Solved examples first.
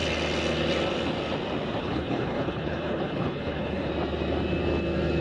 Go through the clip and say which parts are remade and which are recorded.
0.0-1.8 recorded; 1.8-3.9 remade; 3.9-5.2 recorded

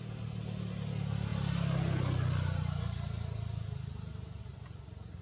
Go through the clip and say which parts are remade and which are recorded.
0.0-5.2 recorded